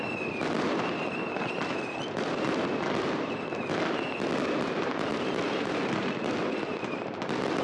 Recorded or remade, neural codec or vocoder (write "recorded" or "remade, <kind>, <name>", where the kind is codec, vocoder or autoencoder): remade, vocoder, BigVGAN v2